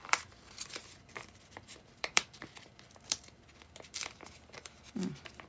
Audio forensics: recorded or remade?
remade